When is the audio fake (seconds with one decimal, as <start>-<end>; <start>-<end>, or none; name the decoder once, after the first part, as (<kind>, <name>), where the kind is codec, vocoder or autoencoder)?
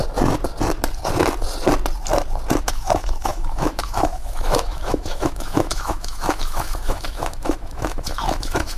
2.6-8.8 (autoencoder, DAC-VAE)